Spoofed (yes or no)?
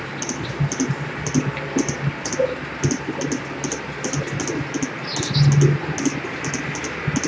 no